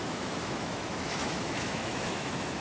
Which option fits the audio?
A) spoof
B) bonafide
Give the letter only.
A